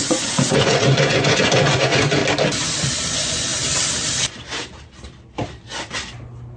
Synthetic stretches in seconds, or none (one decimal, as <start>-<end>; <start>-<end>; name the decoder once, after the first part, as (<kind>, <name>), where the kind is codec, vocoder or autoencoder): 0.0-2.2 (vocoder, Vocos); 3.1-3.5